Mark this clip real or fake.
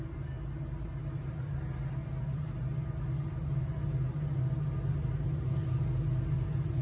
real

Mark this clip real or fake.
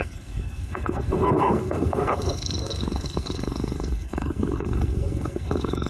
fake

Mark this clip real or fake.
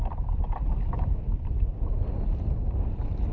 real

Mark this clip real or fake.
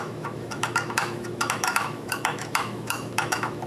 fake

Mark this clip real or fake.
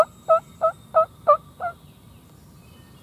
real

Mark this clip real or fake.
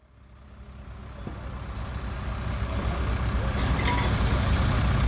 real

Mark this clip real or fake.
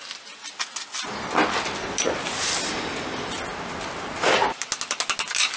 real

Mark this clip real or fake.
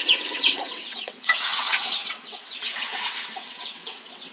fake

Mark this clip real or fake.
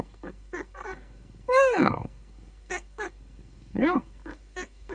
fake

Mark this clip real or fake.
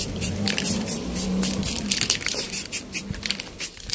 real